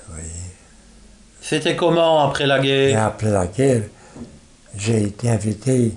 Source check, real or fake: real